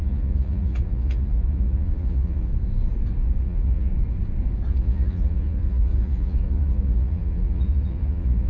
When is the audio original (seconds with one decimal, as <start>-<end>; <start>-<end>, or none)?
2.5-3.4; 3.9-4.7

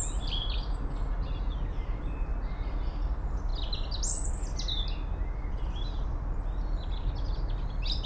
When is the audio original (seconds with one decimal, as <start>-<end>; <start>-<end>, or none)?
0.0-8.1

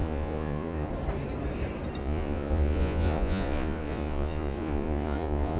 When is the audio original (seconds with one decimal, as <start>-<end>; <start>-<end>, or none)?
0.9-2.0

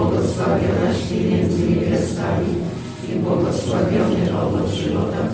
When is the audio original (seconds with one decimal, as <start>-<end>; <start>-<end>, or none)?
0.0-5.3

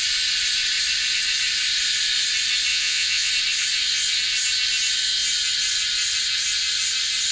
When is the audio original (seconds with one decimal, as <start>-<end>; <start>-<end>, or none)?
0.0-2.7; 3.3-7.3

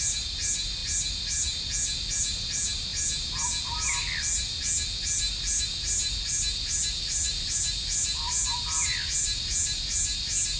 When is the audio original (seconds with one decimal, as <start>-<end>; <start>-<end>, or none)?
0.0-10.6

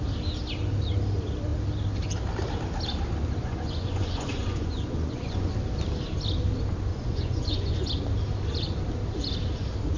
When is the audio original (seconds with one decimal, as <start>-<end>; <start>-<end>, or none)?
0.0-3.4; 5.5-6.9; 7.9-10.0